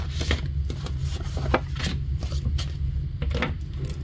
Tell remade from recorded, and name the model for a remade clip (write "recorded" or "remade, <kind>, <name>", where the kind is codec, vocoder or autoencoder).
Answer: recorded